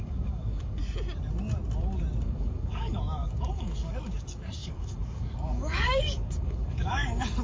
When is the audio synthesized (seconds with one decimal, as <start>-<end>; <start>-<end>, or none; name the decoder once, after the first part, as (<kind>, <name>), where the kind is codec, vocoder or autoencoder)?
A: 0.0-0.8 (codec, DAC); 2.2-7.4